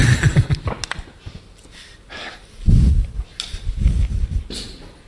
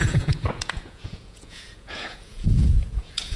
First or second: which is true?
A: first